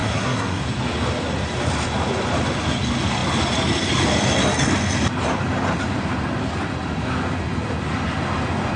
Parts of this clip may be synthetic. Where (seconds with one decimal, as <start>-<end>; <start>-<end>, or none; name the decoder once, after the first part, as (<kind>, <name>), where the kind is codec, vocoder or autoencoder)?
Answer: 0.0-0.6 (codec, SNAC)